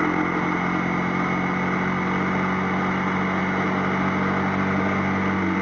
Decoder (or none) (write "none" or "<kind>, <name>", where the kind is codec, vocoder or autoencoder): none